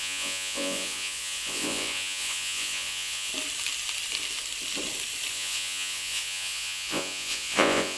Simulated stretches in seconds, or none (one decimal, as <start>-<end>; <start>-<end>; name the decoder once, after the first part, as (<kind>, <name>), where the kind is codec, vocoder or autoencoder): 0.0-3.3 (vocoder, Vocos); 5.3-8.0